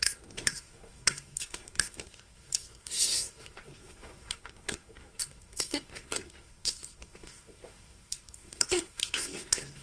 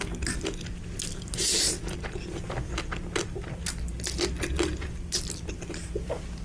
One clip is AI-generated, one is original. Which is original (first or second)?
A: second